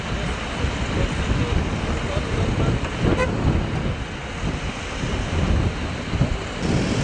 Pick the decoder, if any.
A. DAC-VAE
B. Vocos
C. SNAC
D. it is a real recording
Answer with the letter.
D